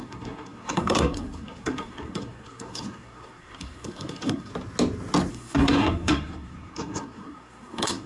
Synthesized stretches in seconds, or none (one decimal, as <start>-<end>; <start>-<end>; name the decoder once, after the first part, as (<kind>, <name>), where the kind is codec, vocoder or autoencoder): 0.0-4.5 (codec, SNAC); 5.3-8.1